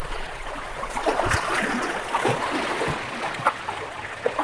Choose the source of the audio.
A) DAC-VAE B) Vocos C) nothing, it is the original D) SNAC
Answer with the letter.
B